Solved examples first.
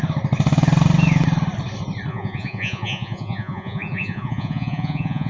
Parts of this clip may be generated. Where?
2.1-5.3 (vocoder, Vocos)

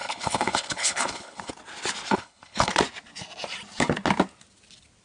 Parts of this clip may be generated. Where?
0.0-1.5 (codec, HILCodec); 2.1-2.7

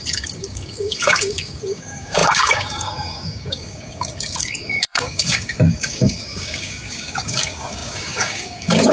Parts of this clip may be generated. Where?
0.0-8.9 (codec, DAC)